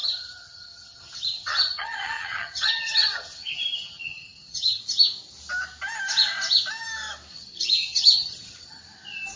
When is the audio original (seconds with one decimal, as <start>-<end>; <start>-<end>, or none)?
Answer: 4.8-7.3; 8.8-9.4